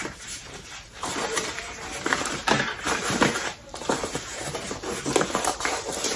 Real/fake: fake